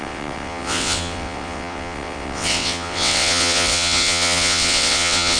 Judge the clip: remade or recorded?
remade